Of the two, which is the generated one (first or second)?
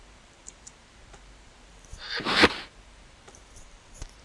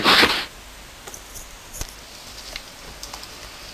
first